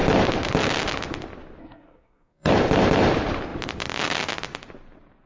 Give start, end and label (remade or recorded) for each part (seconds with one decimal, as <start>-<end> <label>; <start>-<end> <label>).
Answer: 0.0-1.6 recorded; 1.6-2.5 remade; 2.5-5.3 recorded